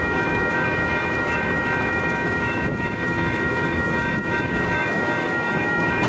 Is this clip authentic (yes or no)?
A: no